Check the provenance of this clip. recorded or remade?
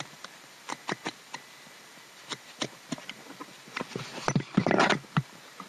remade